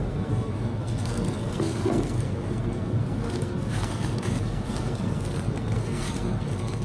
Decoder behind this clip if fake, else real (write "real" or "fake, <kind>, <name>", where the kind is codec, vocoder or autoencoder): fake, codec, SNAC